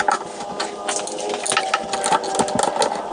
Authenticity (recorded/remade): recorded